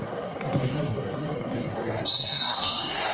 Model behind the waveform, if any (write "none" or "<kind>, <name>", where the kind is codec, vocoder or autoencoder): codec, SNAC